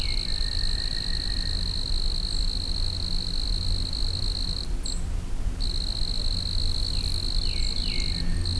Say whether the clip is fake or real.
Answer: real